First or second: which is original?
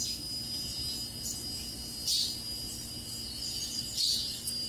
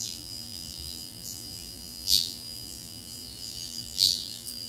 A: first